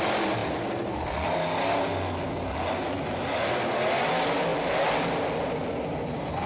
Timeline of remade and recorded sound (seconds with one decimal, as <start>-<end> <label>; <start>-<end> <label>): 0.0-6.5 recorded